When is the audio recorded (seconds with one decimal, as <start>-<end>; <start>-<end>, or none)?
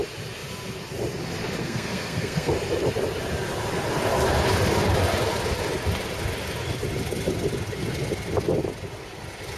0.0-1.6; 2.5-9.6